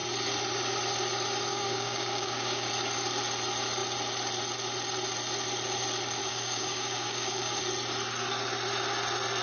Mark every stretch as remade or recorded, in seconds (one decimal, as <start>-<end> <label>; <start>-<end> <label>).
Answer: 0.0-1.5 recorded; 1.5-2.7 remade; 2.7-6.2 recorded; 6.2-7.6 remade; 7.6-9.4 recorded